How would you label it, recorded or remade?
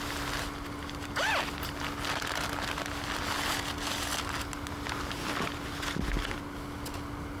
recorded